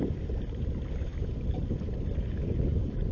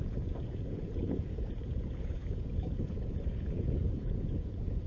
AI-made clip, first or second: second